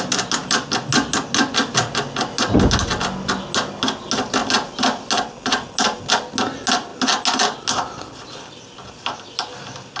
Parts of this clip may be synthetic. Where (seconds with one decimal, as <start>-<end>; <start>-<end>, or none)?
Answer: none